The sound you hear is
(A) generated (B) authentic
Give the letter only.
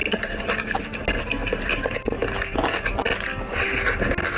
B